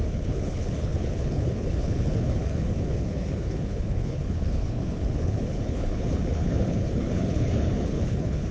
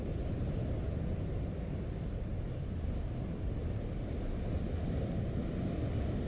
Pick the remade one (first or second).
first